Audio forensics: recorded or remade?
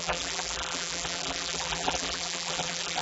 remade